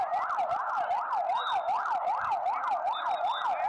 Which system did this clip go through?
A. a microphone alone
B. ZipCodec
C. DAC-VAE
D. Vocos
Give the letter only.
A